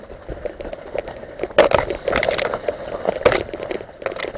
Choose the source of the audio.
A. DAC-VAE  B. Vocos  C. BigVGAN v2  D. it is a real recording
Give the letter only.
D